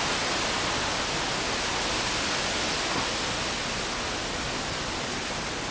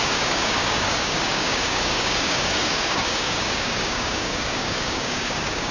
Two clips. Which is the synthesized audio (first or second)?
second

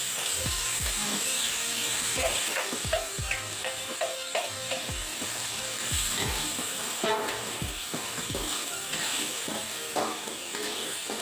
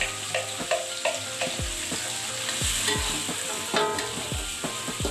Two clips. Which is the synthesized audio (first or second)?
first